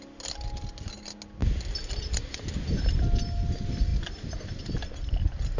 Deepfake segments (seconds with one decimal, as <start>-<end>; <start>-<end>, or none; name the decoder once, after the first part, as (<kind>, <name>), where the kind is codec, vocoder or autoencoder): none